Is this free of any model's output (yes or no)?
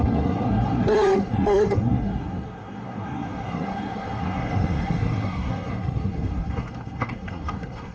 no